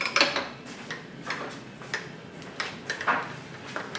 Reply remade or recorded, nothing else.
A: recorded